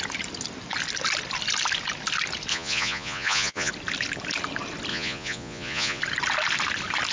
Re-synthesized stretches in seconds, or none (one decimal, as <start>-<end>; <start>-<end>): 2.5-3.7; 4.9-6.0